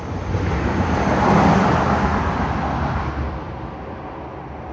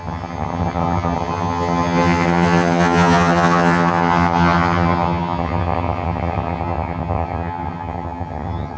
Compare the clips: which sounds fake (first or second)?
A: second